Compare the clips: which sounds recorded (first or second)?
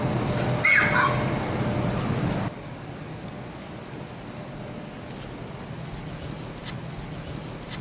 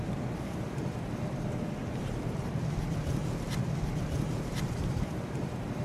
first